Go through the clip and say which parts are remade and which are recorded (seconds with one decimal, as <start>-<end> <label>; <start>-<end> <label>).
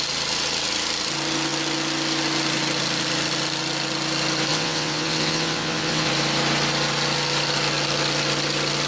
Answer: 0.0-4.5 recorded; 4.5-6.1 remade; 6.1-8.9 recorded